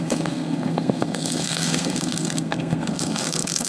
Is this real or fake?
fake